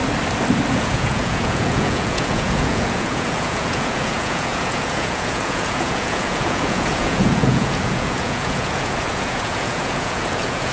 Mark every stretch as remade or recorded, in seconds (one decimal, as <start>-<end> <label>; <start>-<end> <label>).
0.0-0.7 recorded; 0.7-10.7 remade